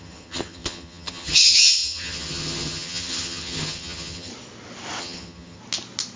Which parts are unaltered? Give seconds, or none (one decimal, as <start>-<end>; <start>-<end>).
4.3-5.0; 5.6-6.2